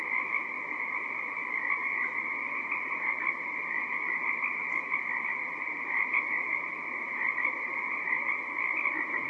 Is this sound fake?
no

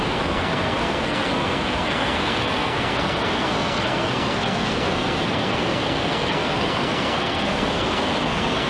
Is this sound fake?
yes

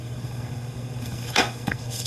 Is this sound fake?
yes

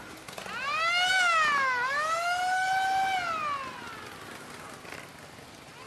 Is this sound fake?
no